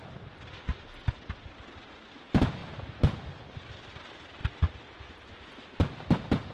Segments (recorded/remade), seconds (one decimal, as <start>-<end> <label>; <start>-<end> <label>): 0.0-6.5 recorded